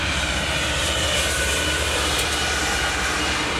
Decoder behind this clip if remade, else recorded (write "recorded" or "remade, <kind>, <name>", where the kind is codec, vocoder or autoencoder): remade, vocoder, BigVGAN v2